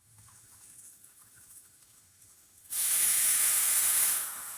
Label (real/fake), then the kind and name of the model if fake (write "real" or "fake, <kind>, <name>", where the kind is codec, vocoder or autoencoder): fake, autoencoder, DAC-VAE